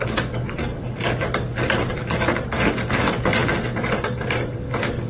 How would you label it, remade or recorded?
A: remade